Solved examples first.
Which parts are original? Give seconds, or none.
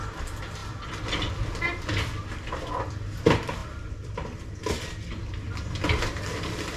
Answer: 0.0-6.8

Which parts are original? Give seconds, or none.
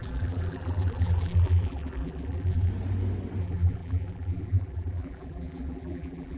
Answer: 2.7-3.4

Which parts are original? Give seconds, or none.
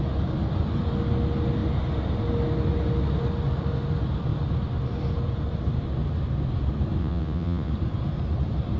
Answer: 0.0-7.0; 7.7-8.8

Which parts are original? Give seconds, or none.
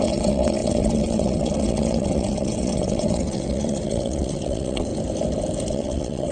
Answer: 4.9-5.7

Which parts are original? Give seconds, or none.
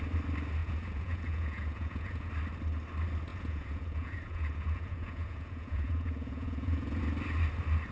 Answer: 0.0-0.6; 2.3-3.3; 7.0-7.9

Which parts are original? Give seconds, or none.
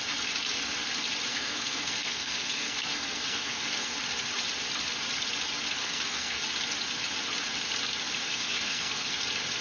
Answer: 0.0-1.3; 3.9-5.8; 6.4-8.2; 9.2-9.6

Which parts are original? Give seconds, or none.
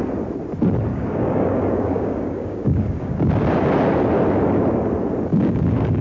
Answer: 0.0-0.9; 3.3-5.3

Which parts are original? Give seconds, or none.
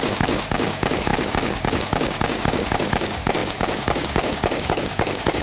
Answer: none